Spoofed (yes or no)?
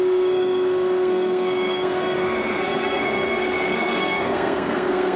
yes